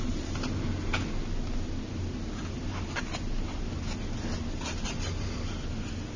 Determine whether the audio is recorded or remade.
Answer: recorded